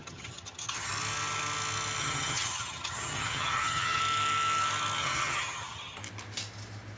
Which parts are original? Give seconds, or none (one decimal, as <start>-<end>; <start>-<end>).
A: 0.9-2.0; 4.0-5.0; 6.0-7.0